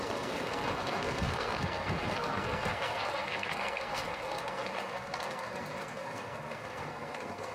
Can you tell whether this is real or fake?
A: fake